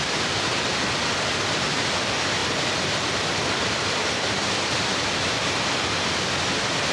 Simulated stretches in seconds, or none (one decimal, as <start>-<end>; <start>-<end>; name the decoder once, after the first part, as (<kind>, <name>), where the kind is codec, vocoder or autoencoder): 2.4-5.1 (vocoder, BigVGAN v2)